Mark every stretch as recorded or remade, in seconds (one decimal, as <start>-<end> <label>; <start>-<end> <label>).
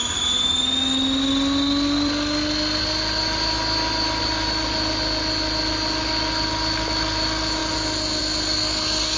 0.0-9.2 recorded